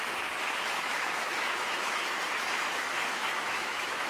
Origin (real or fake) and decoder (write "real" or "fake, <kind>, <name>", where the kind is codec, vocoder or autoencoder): fake, autoencoder, DAC-VAE